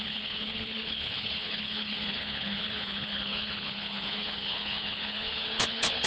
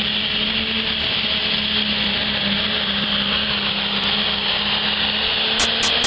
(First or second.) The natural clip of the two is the second